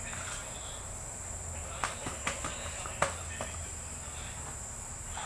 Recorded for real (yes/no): yes